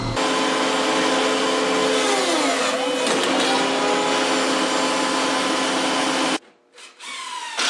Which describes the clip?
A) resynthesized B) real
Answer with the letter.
B